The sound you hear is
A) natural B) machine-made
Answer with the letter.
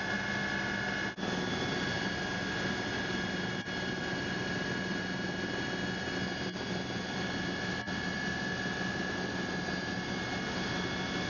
A